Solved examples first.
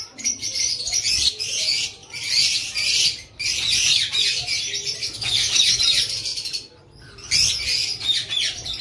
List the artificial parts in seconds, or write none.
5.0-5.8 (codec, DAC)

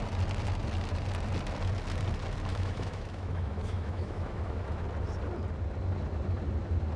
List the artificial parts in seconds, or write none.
2.5-4.8 (autoencoder, DAC-VAE)

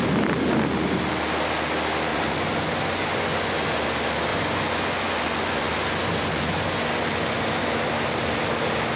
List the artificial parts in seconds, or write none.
2.1-3.7 (vocoder, Vocos); 4.3-7.7

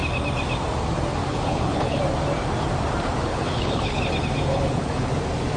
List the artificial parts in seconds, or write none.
1.3-2.0 (codec, HILCodec); 3.3-4.0; 4.5-5.1

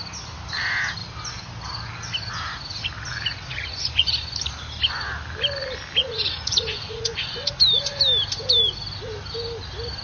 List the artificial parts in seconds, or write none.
3.5-4.1 (vocoder, Vocos); 6.0-7.5

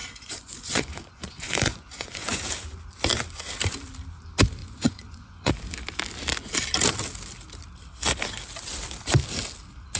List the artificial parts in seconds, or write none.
0.0-2.4 (vocoder, Vocos); 4.6-5.5

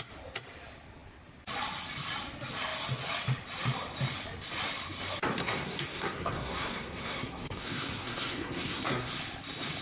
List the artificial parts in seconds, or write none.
5.4-9.1 (codec, SNAC)

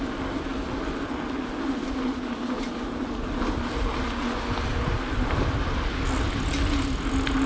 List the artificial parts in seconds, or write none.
none